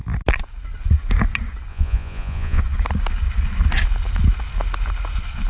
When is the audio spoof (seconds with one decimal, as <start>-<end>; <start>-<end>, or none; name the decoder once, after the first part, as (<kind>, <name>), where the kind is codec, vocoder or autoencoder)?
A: 1.7-2.6 (vocoder, Vocos)